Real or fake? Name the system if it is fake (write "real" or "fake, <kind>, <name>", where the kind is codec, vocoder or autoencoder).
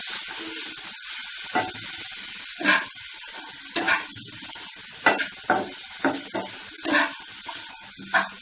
real